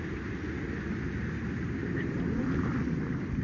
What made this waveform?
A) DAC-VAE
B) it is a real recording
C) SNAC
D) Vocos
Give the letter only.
B